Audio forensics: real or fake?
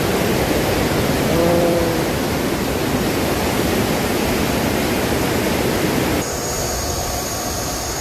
fake